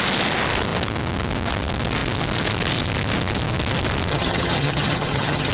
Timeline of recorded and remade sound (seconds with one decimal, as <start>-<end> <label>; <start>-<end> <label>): 0.0-4.1 recorded; 4.1-5.5 remade